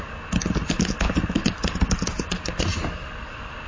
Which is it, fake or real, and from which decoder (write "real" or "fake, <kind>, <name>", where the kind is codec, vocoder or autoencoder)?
real